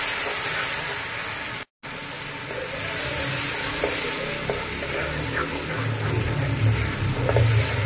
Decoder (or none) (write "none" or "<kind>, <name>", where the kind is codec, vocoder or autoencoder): none